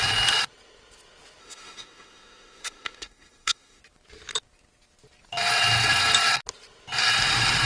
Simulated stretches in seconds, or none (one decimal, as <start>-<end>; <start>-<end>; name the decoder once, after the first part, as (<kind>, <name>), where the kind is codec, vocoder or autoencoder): 1.4-3.8 (autoencoder, DAC-VAE)